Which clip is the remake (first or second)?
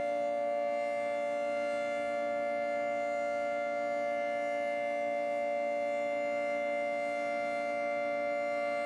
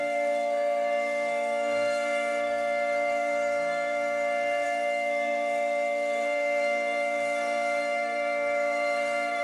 second